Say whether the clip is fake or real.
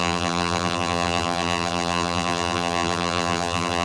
fake